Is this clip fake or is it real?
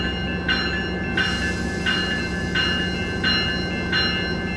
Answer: real